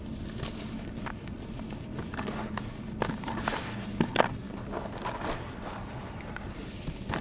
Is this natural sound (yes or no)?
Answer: yes